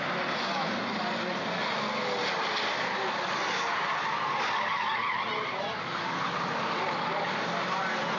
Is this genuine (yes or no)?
yes